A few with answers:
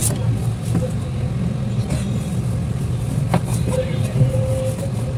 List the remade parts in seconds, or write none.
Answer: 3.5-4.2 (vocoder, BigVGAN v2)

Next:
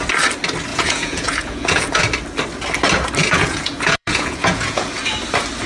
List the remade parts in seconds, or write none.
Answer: 0.7-2.0 (vocoder, Vocos); 3.2-5.0

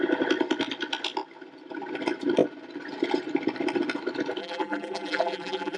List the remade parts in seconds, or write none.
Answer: 4.4-5.8 (vocoder, BigVGAN v2)

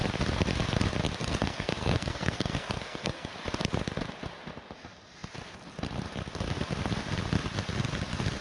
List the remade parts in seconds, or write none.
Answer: 1.2-3.3 (codec, SNAC)

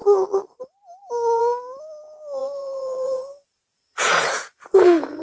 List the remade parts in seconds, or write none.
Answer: 2.4-5.2 (vocoder, Vocos)

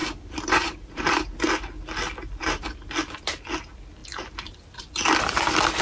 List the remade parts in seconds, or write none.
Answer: 0.0-1.3 (vocoder, BigVGAN v2); 2.4-2.9